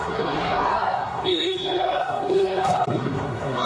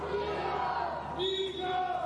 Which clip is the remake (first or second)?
first